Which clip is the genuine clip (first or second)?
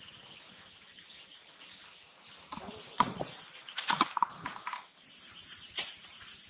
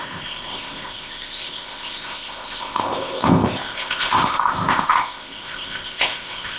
first